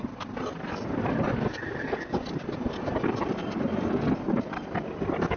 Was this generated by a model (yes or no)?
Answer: yes